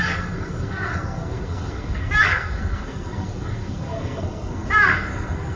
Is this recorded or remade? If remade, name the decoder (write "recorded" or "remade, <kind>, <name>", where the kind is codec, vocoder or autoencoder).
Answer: remade, codec, SNAC